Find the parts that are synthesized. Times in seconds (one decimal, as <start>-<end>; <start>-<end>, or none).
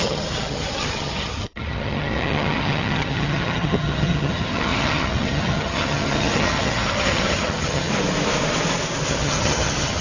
0.0-7.9; 9.1-10.0